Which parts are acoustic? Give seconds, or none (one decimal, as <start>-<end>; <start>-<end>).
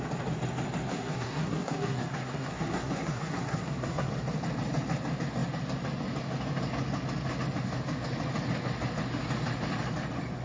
0.0-0.9; 4.1-10.4